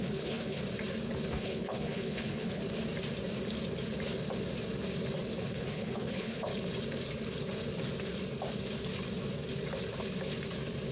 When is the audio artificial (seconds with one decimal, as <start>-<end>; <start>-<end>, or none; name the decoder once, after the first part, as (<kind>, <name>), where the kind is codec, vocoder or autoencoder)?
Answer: 0.0-0.6 (codec, HILCodec); 1.3-2.6; 5.4-6.5